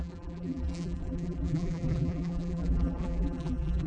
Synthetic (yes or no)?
yes